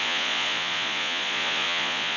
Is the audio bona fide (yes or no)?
no